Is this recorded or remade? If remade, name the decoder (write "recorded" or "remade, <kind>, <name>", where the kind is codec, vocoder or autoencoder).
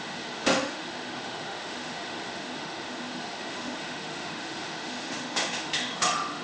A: remade, autoencoder, DAC-VAE